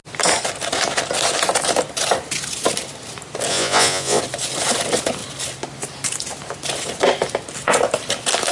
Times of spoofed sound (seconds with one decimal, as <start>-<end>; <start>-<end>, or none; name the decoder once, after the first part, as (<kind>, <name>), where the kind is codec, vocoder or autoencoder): 3.5-4.2 (vocoder, Vocos)